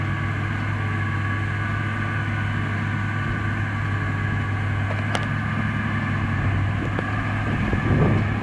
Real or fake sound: real